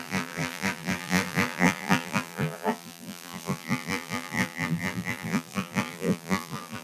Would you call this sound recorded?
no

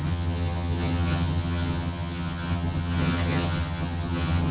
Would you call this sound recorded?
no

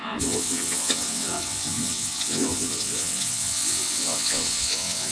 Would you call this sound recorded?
no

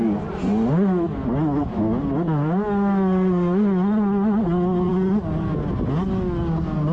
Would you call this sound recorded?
yes